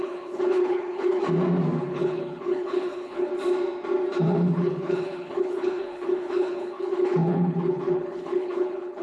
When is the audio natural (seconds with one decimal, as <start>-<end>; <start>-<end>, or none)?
1.2-1.8; 3.3-4.2